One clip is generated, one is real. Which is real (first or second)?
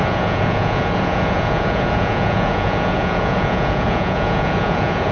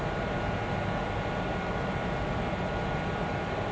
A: second